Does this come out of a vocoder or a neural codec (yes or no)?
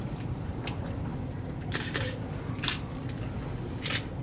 no